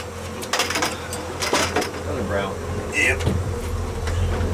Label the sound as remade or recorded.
recorded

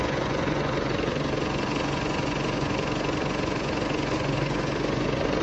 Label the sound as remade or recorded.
remade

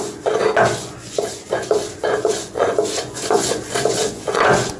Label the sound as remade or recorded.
remade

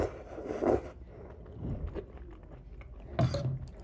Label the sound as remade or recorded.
recorded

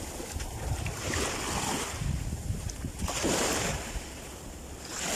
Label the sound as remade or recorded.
recorded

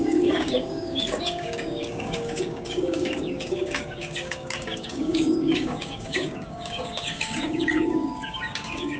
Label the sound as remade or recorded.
remade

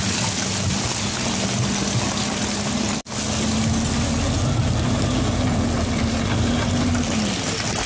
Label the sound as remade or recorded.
recorded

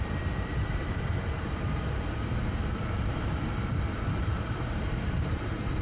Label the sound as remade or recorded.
remade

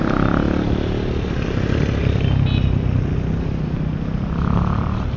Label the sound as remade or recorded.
recorded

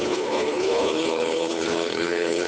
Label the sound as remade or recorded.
remade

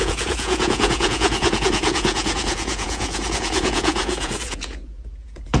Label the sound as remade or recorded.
remade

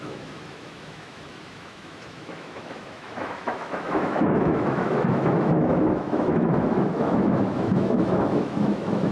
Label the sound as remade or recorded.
remade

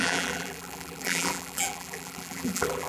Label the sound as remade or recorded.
remade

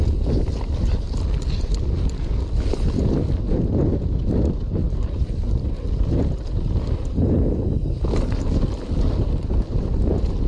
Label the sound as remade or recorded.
recorded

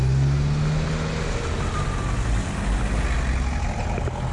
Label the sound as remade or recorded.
recorded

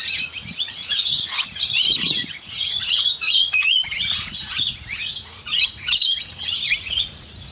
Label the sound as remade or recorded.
remade